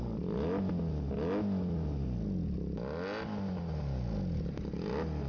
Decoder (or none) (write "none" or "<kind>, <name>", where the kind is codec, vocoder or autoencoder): none